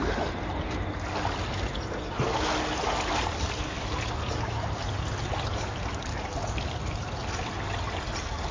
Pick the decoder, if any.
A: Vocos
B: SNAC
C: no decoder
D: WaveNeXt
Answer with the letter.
C